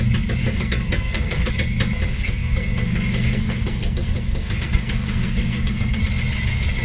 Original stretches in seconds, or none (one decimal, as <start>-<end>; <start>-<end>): 0.0-0.4; 1.5-2.1; 6.0-6.8